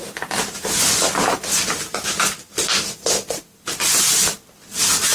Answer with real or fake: real